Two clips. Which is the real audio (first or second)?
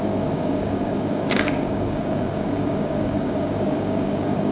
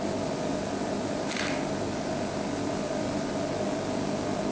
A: second